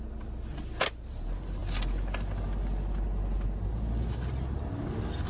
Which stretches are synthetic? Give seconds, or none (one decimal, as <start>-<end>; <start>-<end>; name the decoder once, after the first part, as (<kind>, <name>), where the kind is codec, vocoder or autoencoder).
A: none